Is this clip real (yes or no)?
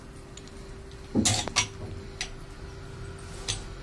yes